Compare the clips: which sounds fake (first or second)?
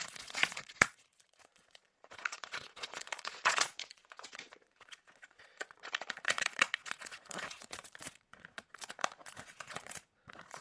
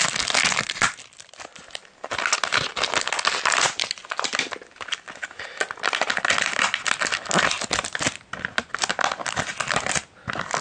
first